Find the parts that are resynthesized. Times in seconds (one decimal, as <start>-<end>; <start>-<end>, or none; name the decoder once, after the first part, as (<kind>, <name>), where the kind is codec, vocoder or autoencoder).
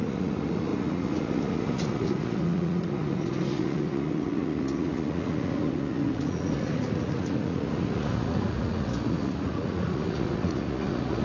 0.0-11.2 (vocoder, Vocos)